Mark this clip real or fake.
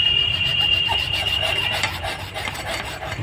fake